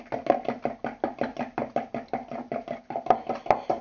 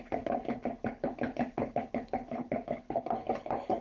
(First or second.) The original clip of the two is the first